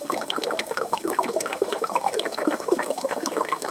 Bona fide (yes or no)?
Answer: no